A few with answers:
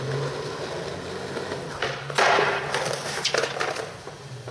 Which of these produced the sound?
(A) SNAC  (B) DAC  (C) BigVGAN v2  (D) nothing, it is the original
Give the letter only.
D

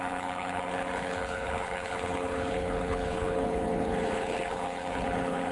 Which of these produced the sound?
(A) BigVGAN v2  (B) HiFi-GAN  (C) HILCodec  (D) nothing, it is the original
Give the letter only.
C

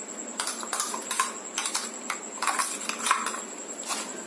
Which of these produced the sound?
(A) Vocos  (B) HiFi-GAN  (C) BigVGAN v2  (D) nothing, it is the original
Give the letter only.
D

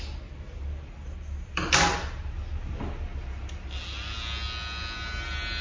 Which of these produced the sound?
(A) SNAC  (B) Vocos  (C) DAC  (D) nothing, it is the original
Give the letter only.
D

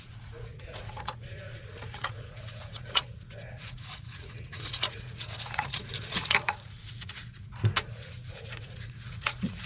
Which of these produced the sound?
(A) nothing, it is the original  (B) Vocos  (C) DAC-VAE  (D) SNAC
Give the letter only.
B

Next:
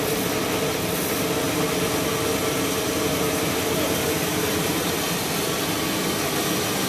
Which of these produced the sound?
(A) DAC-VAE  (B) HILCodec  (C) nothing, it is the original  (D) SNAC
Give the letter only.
C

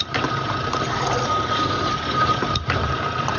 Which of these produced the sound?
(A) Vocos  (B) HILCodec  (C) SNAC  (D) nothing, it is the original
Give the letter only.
D